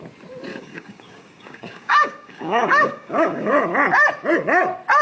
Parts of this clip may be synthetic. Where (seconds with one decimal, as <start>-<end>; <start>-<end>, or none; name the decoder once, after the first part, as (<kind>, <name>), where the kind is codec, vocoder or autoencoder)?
0.5-3.5 (codec, DAC)